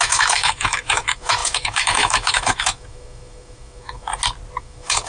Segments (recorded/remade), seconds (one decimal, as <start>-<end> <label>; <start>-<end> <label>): 0.0-4.1 remade; 4.1-4.6 recorded; 4.6-5.1 remade